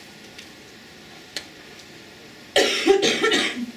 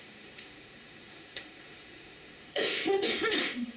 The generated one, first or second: second